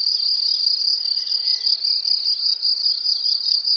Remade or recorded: recorded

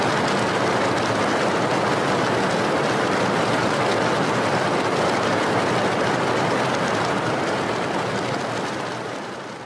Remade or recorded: recorded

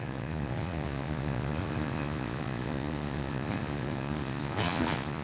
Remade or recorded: remade